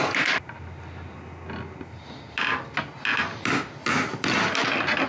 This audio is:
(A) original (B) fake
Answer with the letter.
A